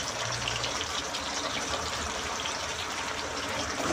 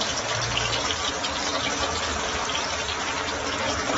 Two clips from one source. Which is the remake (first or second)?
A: first